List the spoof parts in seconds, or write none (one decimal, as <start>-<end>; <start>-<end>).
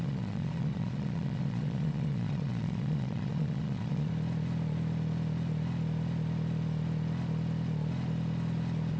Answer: 0.0-4.1